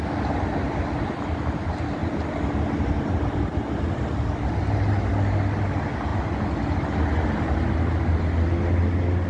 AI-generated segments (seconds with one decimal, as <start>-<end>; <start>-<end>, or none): none